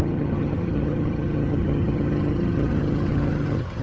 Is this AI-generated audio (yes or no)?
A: yes